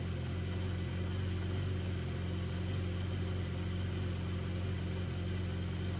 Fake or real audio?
real